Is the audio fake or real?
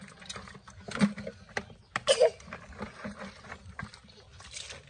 real